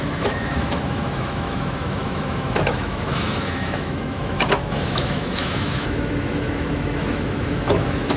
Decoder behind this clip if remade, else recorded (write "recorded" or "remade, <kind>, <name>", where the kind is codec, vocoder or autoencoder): remade, autoencoder, DAC-VAE